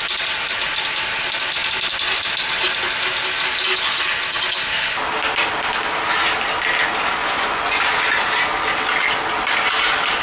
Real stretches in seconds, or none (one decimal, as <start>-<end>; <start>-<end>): 0.0-7.2; 7.8-10.2